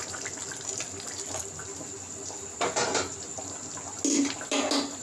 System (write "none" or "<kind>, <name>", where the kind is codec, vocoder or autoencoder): none